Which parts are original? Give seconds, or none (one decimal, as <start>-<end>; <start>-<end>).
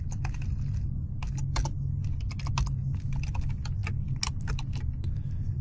0.0-5.6